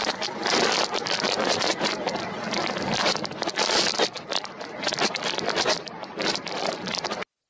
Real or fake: real